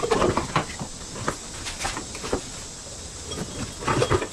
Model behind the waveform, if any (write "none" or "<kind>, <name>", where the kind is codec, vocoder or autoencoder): none